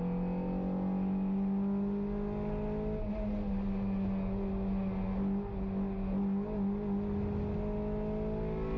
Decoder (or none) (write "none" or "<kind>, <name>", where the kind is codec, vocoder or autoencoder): none